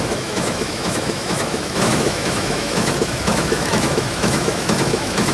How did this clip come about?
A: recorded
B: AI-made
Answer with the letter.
B